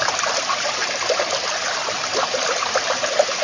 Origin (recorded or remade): recorded